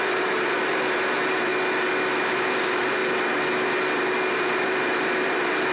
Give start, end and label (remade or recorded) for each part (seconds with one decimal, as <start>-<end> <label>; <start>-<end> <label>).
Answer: 0.0-1.5 remade; 1.5-2.3 recorded; 2.3-3.0 remade; 3.0-4.3 recorded; 4.3-5.7 remade